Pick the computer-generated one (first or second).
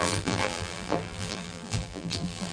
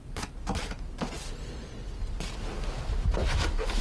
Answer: first